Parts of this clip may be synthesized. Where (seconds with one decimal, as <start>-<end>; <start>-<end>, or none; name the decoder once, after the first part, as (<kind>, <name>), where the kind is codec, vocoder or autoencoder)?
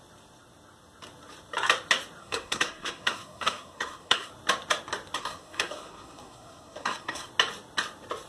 2.2-4.3 (codec, SNAC); 5.2-7.3